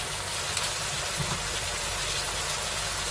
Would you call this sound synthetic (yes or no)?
no